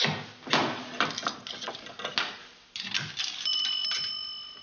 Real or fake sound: real